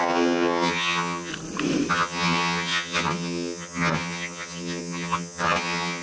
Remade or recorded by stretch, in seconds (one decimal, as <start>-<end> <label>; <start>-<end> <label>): 0.0-1.3 remade; 1.3-1.9 recorded; 1.9-6.0 remade